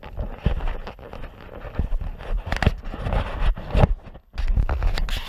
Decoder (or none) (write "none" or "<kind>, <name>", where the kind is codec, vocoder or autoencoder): none